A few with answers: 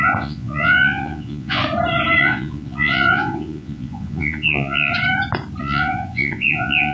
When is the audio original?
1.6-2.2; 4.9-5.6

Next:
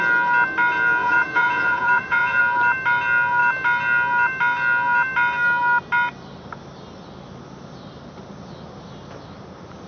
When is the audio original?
0.0-1.0; 2.4-9.9

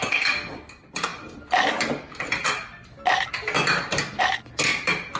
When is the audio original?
0.0-5.2